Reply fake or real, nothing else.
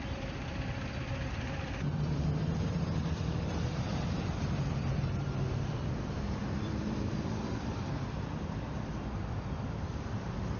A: fake